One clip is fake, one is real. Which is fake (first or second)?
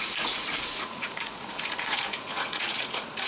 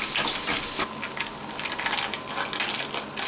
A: first